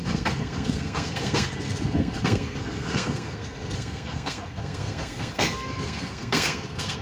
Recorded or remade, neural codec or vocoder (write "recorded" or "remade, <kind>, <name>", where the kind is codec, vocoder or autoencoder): remade, codec, SNAC